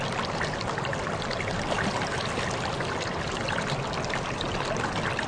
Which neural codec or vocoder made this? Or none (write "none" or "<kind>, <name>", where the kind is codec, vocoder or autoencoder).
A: none